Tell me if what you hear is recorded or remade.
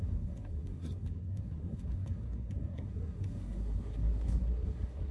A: remade